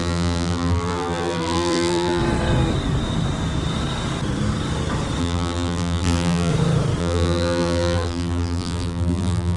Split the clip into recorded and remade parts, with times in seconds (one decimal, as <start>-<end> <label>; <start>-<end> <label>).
0.0-2.2 remade; 2.2-5.2 recorded; 5.2-6.5 remade; 6.5-7.0 recorded; 7.0-9.6 remade

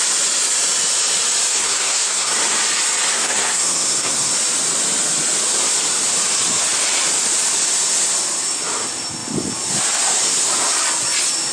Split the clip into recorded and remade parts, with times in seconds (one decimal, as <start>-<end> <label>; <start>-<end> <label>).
0.0-1.5 recorded; 1.5-2.3 remade; 2.3-3.1 recorded; 3.1-4.3 remade; 4.3-11.5 recorded

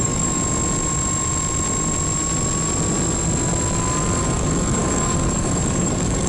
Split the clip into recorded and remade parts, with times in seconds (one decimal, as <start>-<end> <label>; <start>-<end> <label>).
0.0-0.4 remade; 0.4-4.2 recorded; 4.2-6.3 remade

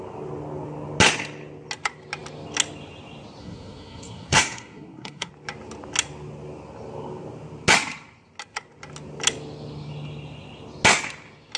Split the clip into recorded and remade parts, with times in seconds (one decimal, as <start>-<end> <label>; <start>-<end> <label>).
0.0-3.4 recorded; 3.4-5.3 remade; 5.3-11.6 recorded